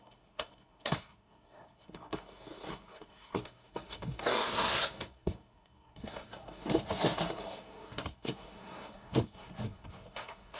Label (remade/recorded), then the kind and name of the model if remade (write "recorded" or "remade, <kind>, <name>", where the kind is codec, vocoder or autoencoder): remade, codec, SNAC